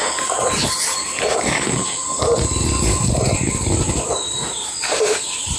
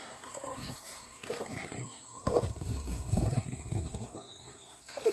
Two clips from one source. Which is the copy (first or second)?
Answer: second